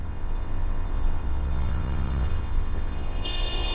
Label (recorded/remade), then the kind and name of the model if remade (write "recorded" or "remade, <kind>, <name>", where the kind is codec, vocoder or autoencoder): remade, vocoder, WaveNeXt